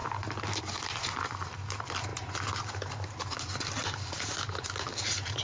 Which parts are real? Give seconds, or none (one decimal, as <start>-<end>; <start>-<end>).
0.0-5.4